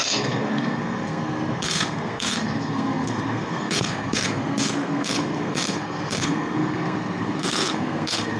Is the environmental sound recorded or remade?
remade